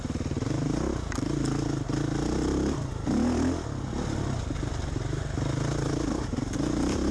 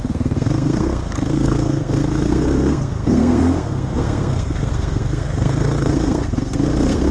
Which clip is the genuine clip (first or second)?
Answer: first